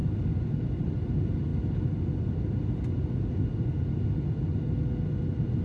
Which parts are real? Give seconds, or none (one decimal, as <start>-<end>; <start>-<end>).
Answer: 0.0-5.6